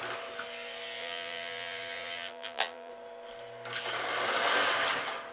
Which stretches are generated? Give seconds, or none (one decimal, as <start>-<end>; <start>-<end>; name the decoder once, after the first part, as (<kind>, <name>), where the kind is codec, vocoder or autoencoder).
1.0-2.9 (vocoder, BigVGAN v2)